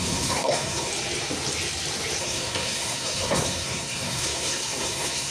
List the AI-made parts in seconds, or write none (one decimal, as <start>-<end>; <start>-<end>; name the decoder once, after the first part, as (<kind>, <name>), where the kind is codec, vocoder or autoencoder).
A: 0.0-0.9 (codec, SNAC); 2.2-5.3